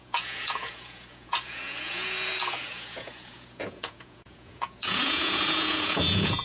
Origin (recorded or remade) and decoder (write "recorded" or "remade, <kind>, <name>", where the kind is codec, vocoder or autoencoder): remade, vocoder, Vocos